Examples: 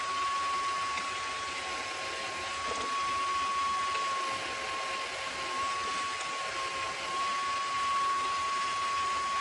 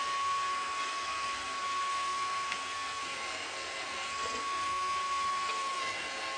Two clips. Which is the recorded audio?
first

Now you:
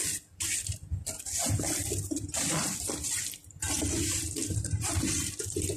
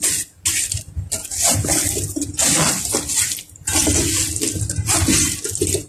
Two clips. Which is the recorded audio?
second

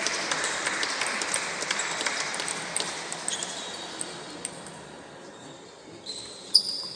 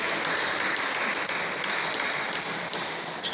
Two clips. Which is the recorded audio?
second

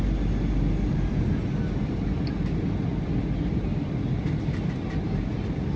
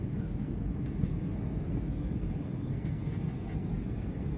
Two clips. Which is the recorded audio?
first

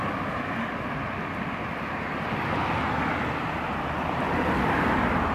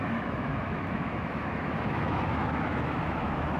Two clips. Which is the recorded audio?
first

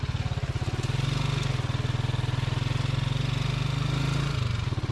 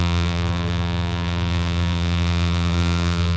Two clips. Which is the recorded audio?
first